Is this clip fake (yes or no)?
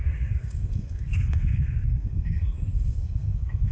yes